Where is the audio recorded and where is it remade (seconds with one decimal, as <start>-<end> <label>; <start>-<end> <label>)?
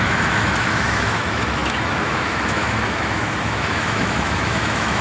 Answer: 0.0-5.0 remade